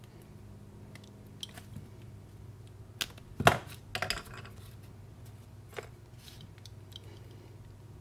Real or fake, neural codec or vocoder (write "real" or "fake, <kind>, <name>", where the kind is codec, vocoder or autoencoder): real